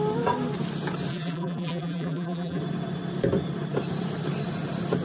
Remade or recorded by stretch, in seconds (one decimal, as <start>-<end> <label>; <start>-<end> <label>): 0.0-1.1 recorded; 1.1-2.6 remade; 2.6-5.0 recorded

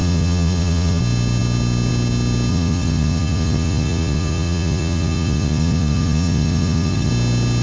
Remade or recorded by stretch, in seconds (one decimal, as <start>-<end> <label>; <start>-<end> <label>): 0.0-1.0 remade; 1.0-2.5 recorded; 2.5-7.1 remade; 7.1-7.6 recorded

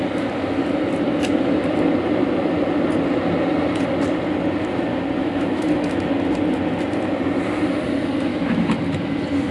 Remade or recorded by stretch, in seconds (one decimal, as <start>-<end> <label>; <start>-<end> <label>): 0.0-5.2 recorded; 5.2-5.9 remade; 5.9-8.3 recorded; 8.3-8.8 remade; 8.8-9.5 recorded

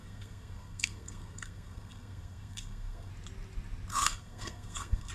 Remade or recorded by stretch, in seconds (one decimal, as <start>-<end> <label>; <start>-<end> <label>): 0.0-3.1 remade; 3.1-3.9 recorded; 3.9-5.1 remade

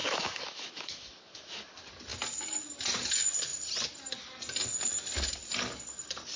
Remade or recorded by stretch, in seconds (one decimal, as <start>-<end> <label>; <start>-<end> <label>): 0.0-1.7 remade; 1.7-6.4 recorded

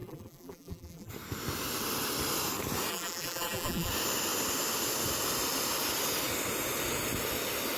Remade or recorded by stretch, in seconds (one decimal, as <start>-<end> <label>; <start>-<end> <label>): 0.0-1.1 remade; 1.1-2.9 recorded; 2.9-3.9 remade; 3.9-7.8 recorded

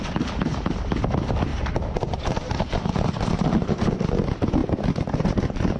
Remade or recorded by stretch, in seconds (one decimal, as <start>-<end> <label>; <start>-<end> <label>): 0.0-1.5 recorded; 1.5-3.9 remade; 3.9-5.8 recorded

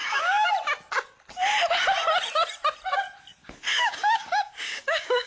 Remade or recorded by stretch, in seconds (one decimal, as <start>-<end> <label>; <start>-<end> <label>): 0.0-0.5 remade; 0.5-3.4 recorded; 3.4-5.3 remade